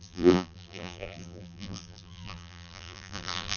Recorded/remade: remade